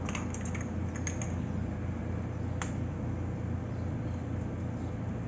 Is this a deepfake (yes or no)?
no